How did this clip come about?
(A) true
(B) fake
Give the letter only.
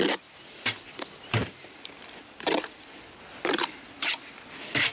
B